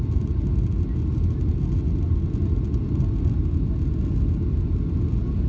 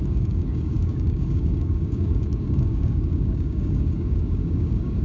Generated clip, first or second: second